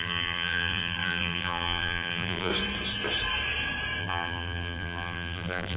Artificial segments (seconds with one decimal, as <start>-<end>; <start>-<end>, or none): 0.0-2.5; 4.0-5.8